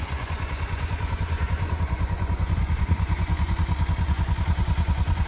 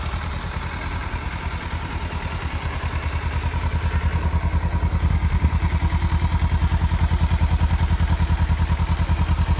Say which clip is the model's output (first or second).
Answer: first